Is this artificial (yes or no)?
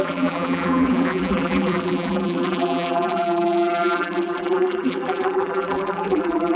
yes